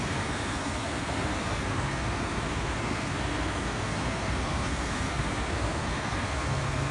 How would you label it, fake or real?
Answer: fake